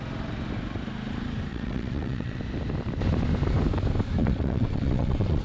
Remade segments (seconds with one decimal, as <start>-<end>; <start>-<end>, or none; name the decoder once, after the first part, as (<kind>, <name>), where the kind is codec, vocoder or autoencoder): 1.5-2.4 (vocoder, WaveNeXt); 4.2-5.4